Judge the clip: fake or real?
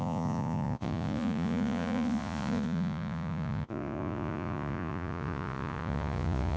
fake